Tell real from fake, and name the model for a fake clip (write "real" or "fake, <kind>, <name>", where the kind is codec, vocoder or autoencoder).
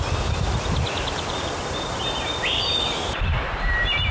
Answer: real